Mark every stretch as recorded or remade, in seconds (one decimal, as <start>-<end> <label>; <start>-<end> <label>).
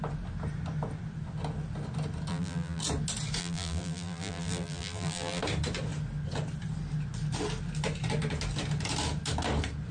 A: 0.0-2.3 recorded; 2.3-2.8 remade; 2.8-3.4 recorded; 3.4-5.4 remade; 5.4-9.9 recorded